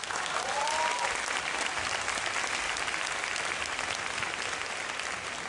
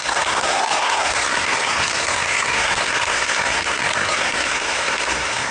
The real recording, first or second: first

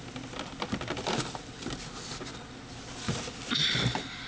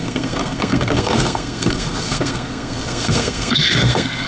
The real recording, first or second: first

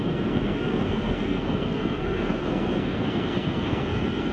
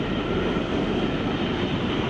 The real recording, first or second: second